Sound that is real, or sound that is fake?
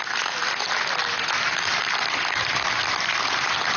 real